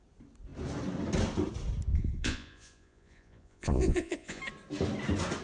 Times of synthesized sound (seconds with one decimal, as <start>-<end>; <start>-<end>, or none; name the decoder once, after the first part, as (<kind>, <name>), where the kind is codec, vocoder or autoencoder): 1.9-4.4 (vocoder, Vocos)